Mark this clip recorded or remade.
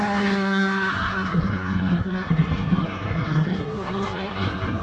remade